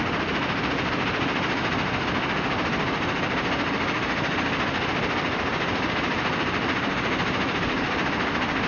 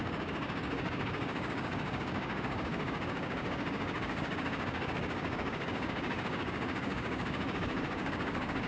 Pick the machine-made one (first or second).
second